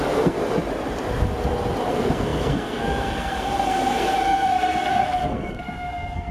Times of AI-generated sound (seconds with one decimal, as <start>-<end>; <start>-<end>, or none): 0.0-0.4; 1.9-6.3